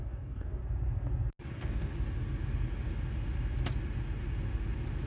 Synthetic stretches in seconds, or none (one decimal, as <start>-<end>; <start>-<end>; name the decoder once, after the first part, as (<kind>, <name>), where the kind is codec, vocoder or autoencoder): 0.0-0.6 (codec, DAC); 1.5-1.9